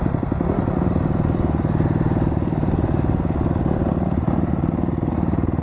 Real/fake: real